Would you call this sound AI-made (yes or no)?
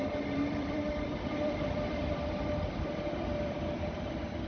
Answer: yes